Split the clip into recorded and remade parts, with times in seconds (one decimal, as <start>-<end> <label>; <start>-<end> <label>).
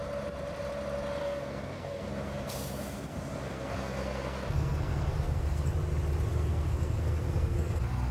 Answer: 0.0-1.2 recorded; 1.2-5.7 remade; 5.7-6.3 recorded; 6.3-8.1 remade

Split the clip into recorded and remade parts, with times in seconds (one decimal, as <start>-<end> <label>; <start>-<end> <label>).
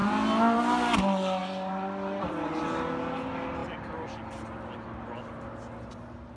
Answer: 0.0-1.4 recorded; 1.4-2.5 remade; 2.5-6.4 recorded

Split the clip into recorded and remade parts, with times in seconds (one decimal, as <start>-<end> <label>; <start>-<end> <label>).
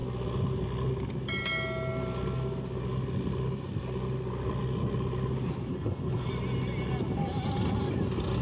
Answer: 0.0-5.7 recorded; 5.7-6.3 remade; 6.3-8.4 recorded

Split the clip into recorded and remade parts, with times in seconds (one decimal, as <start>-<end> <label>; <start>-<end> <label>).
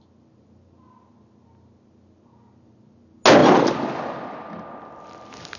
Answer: 0.0-5.6 recorded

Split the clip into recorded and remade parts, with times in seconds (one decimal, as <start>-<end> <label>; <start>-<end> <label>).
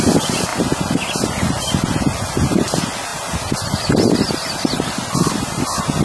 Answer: 0.0-0.5 remade; 0.5-2.0 recorded; 2.0-6.0 remade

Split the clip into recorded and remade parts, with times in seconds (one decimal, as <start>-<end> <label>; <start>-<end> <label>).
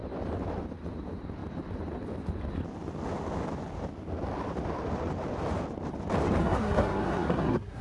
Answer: 0.0-6.4 recorded; 6.4-7.8 remade